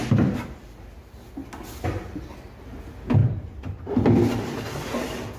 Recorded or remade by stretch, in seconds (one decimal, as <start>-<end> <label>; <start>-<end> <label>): 0.0-3.2 recorded; 3.2-3.9 remade; 3.9-5.4 recorded